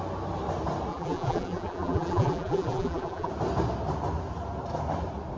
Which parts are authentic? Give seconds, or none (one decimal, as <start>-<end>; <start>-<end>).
0.0-0.9; 3.3-5.4